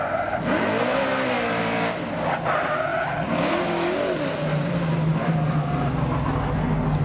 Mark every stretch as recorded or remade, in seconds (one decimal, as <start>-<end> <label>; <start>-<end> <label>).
0.0-7.0 recorded